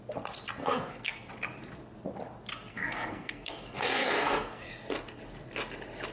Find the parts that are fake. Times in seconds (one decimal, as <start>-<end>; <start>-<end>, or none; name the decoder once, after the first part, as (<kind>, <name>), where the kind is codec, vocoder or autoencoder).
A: 0.6-1.3 (codec, SNAC); 2.7-4.7